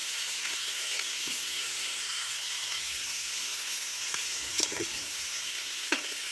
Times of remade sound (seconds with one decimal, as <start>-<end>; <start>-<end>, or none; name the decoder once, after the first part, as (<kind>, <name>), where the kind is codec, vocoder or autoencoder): 0.0-6.3 (codec, SNAC)

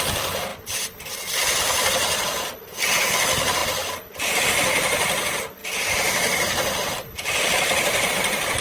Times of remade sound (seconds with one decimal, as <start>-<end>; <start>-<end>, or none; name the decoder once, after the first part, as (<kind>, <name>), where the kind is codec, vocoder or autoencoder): 0.5-1.1 (vocoder, BigVGAN v2); 5.6-8.1

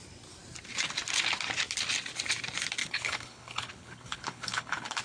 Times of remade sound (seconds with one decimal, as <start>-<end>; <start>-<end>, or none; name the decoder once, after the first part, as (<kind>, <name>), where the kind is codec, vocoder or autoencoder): 2.8-5.0 (codec, HILCodec)

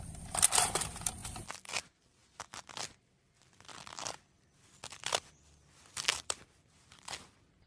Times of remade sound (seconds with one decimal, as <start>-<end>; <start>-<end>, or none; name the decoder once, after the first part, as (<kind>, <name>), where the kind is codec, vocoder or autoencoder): 0.0-2.2 (vocoder, BigVGAN v2); 3.0-3.7; 4.2-7.7

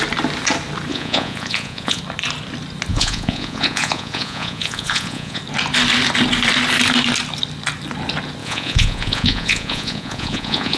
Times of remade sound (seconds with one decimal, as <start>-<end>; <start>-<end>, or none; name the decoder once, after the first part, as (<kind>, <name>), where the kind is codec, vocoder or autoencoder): 0.9-2.0 (vocoder, Vocos); 2.9-5.4; 8.4-10.8